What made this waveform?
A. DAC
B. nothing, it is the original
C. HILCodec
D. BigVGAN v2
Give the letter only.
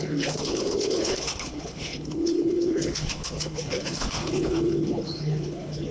C